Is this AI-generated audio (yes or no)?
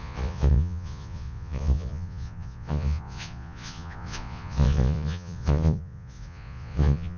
yes